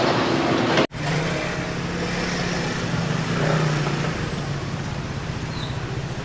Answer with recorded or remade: recorded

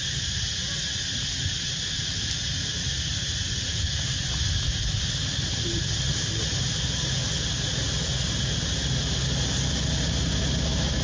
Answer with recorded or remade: recorded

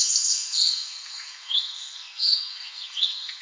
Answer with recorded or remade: remade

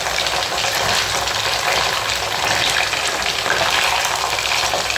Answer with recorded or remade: recorded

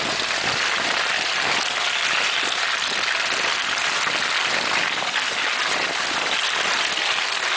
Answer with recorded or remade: recorded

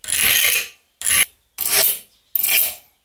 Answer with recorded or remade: recorded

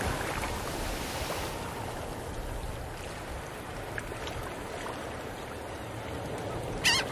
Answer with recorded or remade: recorded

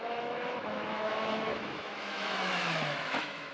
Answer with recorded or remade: remade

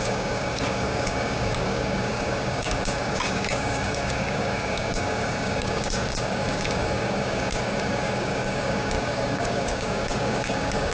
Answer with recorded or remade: remade